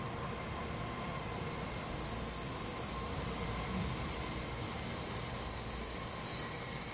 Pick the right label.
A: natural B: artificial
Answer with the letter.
B